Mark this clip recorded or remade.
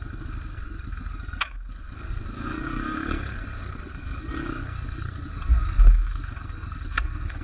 remade